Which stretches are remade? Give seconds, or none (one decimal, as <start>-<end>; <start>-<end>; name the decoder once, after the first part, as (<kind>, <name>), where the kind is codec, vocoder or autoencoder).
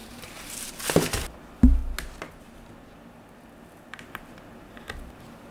0.0-0.7 (vocoder, BigVGAN v2)